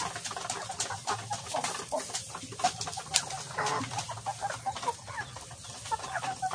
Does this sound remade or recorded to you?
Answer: recorded